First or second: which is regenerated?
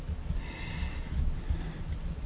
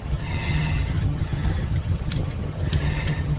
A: second